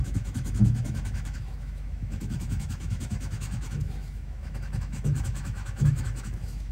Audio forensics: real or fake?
fake